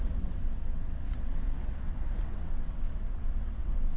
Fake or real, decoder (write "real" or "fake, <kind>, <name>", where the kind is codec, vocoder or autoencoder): fake, vocoder, WaveNeXt